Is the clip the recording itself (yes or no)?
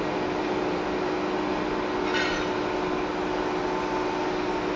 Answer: yes